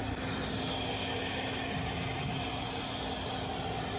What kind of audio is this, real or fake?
real